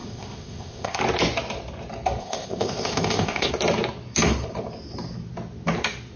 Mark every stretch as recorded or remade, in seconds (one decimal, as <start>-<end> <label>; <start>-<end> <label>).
0.0-1.0 remade; 1.0-2.2 recorded; 2.2-3.5 remade; 3.5-6.2 recorded